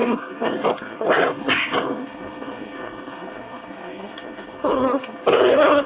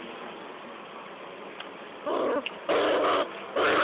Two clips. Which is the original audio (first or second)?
second